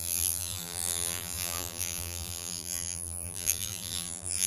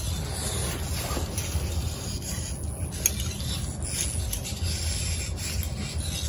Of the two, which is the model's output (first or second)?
first